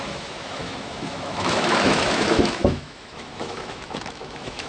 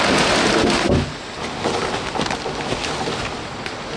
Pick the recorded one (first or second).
second